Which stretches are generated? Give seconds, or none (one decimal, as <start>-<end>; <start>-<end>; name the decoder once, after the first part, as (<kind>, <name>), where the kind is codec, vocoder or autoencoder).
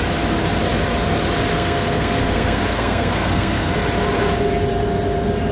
1.5-3.7 (codec, SNAC)